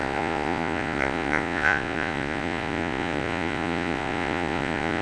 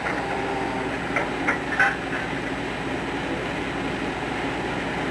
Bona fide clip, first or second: second